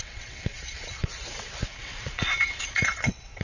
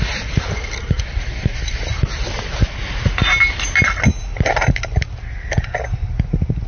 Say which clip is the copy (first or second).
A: first